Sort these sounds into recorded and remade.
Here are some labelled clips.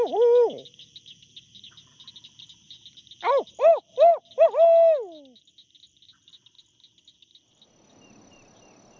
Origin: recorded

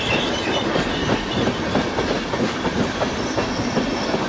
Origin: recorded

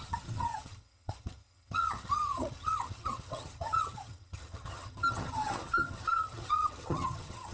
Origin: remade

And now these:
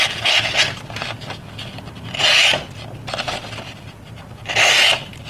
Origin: recorded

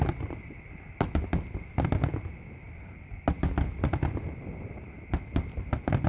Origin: recorded